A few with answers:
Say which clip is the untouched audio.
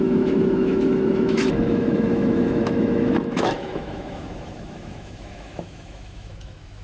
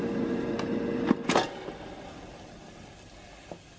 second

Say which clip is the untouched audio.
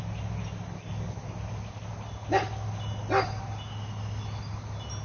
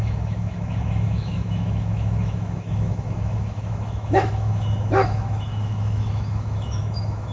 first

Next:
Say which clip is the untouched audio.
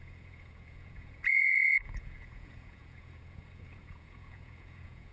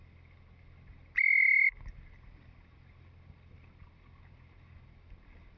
second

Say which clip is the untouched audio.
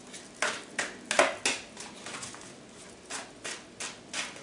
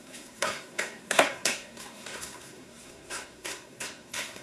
first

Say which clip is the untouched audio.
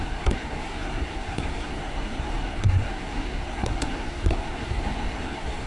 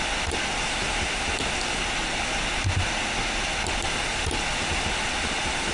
second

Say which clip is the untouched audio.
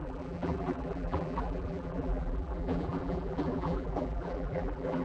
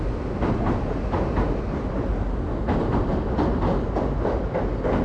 second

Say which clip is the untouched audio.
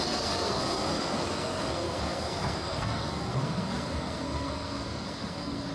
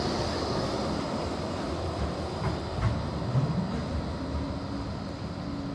second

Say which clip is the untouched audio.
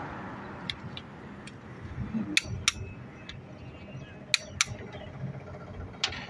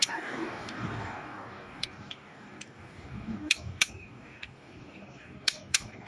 first